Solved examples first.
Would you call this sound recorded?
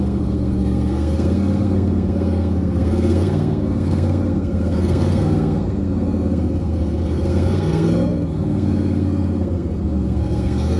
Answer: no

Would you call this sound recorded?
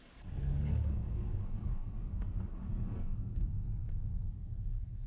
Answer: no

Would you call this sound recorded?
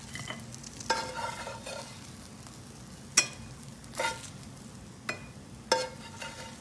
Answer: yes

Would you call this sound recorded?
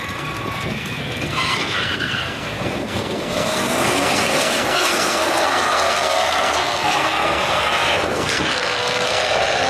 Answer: no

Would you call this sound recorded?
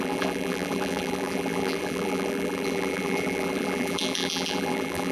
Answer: no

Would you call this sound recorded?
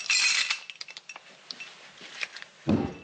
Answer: yes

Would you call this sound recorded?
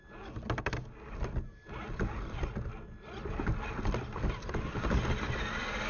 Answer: yes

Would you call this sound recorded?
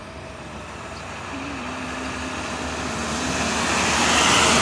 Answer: yes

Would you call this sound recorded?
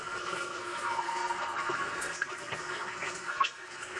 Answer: no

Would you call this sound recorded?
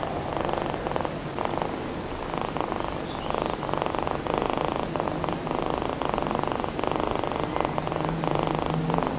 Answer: yes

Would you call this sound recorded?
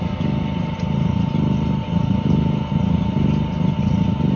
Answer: yes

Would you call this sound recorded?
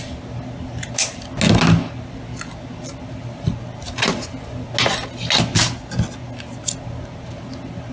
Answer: yes